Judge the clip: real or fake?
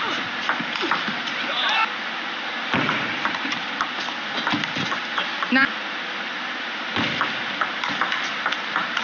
real